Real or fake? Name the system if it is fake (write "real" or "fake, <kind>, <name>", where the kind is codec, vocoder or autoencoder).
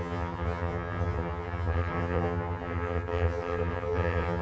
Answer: fake, vocoder, HiFi-GAN